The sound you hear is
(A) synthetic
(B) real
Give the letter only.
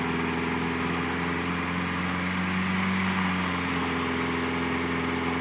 B